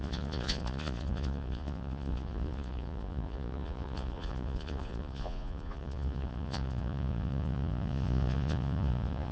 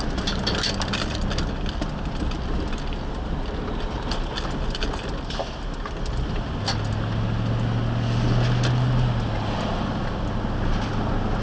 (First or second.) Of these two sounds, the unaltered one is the second